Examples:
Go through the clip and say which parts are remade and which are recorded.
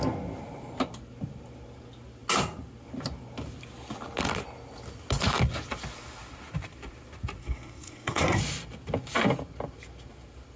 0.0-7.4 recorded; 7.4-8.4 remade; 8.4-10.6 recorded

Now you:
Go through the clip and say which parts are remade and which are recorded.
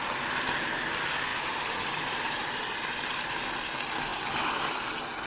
0.0-1.3 recorded; 1.3-2.6 remade; 2.6-4.1 recorded; 4.1-4.7 remade; 4.7-5.3 recorded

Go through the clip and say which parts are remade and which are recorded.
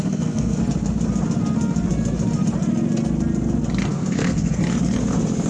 0.0-0.6 remade; 0.6-3.9 recorded; 3.9-4.6 remade; 4.6-5.5 recorded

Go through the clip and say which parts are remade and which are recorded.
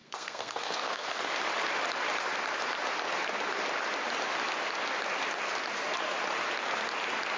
0.0-1.2 remade; 1.2-7.4 recorded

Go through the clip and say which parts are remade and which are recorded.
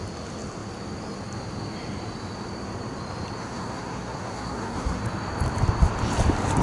0.0-3.4 recorded; 3.4-5.0 remade; 5.0-6.6 recorded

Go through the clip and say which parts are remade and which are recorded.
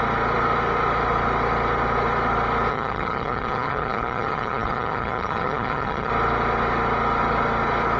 0.0-2.7 recorded; 2.7-6.1 remade; 6.1-8.0 recorded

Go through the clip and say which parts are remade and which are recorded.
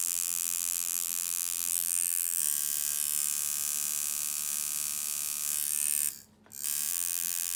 0.0-2.4 remade; 2.4-6.9 recorded; 6.9-7.6 remade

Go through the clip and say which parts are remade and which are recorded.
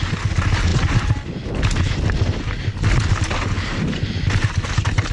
0.0-5.1 recorded